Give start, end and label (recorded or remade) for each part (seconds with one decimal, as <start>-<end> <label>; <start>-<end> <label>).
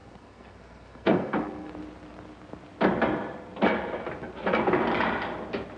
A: 0.0-1.7 remade; 1.7-5.8 recorded